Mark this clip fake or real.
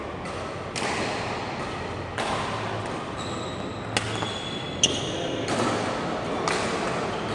real